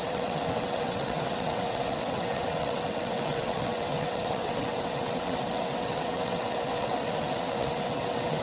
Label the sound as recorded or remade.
remade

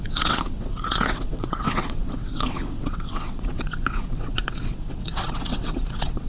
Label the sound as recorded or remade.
remade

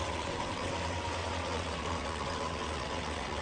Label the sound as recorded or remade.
remade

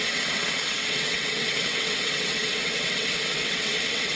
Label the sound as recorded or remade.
remade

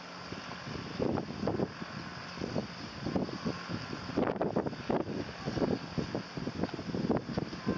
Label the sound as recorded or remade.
recorded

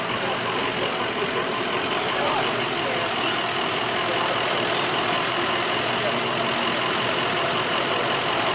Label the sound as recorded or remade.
recorded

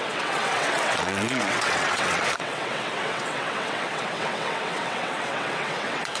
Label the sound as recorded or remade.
remade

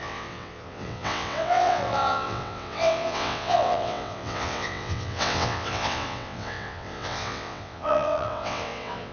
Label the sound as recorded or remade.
remade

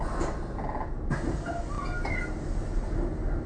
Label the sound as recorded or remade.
recorded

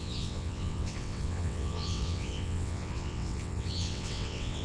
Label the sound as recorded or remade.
remade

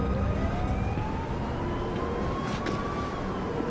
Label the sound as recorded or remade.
recorded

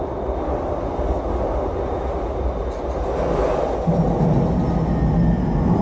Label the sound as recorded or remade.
recorded